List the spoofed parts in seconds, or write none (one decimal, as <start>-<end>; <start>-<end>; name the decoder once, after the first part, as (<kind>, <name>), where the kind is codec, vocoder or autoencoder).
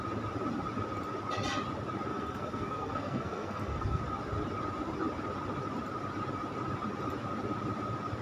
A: 2.1-4.0 (codec, SNAC)